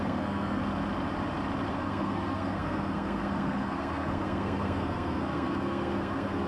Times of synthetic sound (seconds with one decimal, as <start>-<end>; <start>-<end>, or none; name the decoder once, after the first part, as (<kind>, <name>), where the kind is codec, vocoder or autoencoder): 0.0-0.6 (codec, SNAC); 1.7-6.5